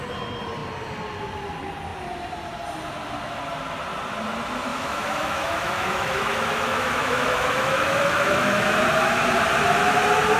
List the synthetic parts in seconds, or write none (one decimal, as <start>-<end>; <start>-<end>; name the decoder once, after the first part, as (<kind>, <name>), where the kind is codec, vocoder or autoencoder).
4.7-8.8 (autoencoder, DAC-VAE)